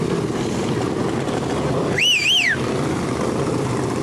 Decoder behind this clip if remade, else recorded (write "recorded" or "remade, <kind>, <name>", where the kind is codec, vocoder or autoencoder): recorded